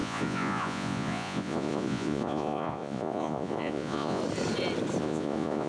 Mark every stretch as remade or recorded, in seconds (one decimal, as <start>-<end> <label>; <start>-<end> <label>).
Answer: 0.0-4.2 remade; 4.2-5.0 recorded; 5.0-5.7 remade